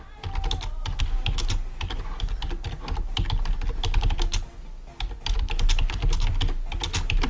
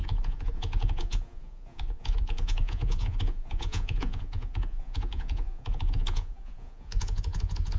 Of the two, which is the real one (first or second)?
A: first